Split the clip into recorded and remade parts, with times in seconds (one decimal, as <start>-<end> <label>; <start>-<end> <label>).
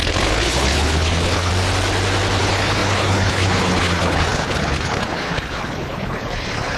0.0-1.5 remade; 1.5-2.4 recorded; 2.4-6.8 remade